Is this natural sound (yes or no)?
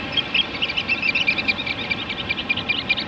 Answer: yes